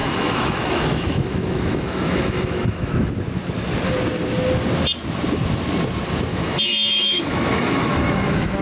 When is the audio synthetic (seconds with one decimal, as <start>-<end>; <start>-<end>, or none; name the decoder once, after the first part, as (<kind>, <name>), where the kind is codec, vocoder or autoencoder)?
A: 0.0-3.1 (autoencoder, DAC-VAE); 6.3-8.6